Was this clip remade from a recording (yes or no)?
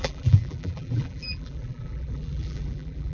yes